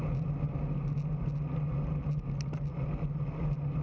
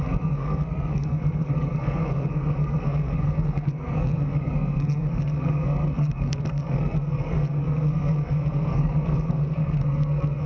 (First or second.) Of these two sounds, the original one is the first